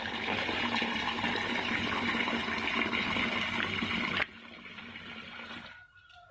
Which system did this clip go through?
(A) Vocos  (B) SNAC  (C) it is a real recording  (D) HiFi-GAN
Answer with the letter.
C